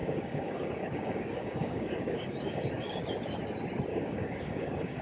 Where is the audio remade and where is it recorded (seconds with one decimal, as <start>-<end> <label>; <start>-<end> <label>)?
0.0-3.0 remade; 3.0-3.9 recorded; 3.9-5.0 remade